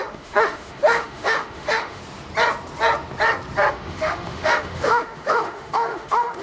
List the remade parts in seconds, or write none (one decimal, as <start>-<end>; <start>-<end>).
0.0-2.0; 3.7-6.4